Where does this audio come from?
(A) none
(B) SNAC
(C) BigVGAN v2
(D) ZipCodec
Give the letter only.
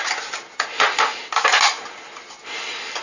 A